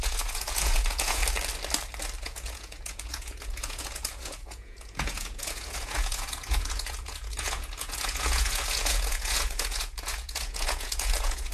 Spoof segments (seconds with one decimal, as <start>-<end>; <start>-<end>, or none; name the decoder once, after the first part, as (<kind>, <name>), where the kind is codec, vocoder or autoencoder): 0.0-1.2 (vocoder, Vocos); 2.2-11.5